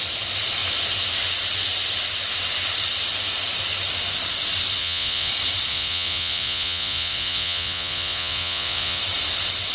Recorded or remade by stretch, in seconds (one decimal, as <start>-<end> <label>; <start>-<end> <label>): 0.0-4.8 recorded; 4.8-5.3 remade; 5.3-5.7 recorded; 5.7-9.0 remade; 9.0-9.7 recorded